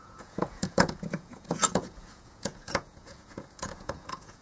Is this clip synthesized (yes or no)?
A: yes